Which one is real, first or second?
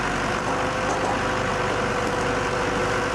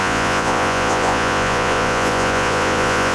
first